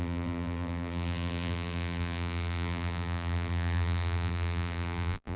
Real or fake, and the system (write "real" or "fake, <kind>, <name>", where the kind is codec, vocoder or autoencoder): fake, vocoder, BigVGAN v2